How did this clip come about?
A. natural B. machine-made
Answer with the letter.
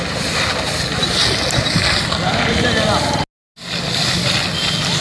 A